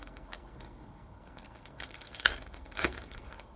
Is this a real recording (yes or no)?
no